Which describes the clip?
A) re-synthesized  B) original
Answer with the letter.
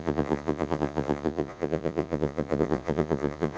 A